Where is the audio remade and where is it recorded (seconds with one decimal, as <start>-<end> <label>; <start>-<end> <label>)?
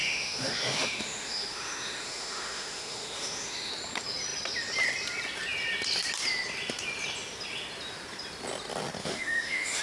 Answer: 0.0-3.7 remade; 3.7-9.0 recorded; 9.0-9.8 remade